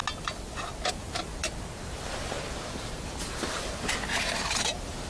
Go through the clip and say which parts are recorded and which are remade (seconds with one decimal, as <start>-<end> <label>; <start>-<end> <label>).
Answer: 0.0-0.9 recorded; 0.9-1.4 remade; 1.4-4.5 recorded; 4.5-5.1 remade